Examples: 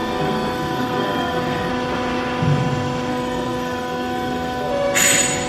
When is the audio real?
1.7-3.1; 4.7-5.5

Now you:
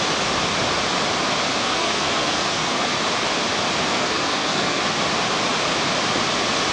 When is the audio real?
0.0-1.5; 2.9-3.8; 4.8-6.7

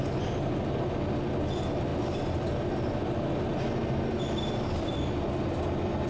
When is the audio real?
0.0-6.1

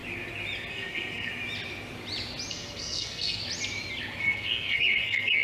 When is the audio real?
0.0-0.7; 1.3-2.5; 3.4-4.2

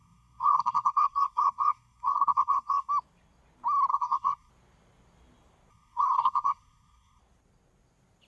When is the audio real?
2.9-3.9; 4.5-5.7; 7.2-8.3

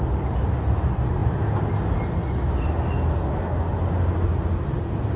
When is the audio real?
0.0-5.2

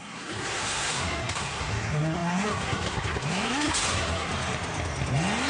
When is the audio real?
4.3-5.5

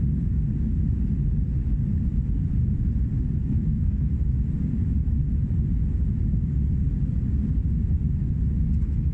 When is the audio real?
0.0-3.4; 4.1-9.1